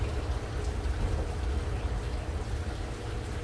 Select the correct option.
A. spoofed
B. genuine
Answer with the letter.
B